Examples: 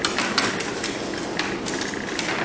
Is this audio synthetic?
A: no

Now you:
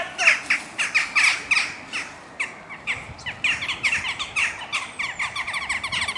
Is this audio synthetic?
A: no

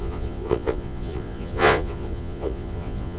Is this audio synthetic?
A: yes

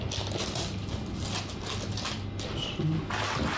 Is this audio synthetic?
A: no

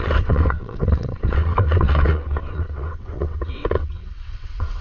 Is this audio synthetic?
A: yes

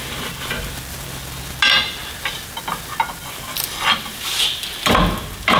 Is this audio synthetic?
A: no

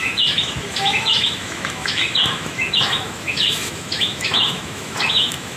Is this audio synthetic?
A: yes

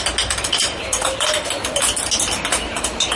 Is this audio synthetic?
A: no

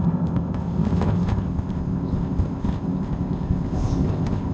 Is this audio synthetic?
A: yes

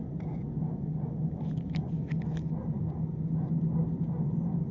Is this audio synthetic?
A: no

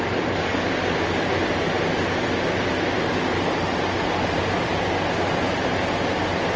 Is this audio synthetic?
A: no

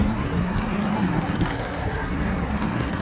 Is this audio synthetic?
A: yes